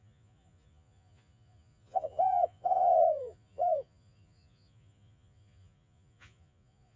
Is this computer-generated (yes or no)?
yes